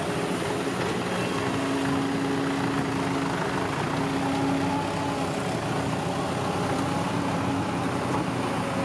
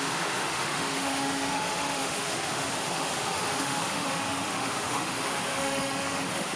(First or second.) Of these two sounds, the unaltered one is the first